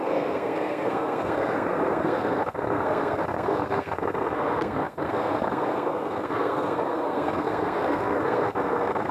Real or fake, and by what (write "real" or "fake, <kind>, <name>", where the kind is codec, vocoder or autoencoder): fake, codec, SNAC